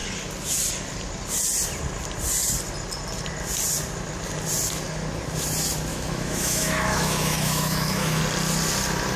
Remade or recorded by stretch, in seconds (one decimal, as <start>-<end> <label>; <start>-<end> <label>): 0.0-5.9 recorded; 5.9-8.2 remade; 8.2-9.2 recorded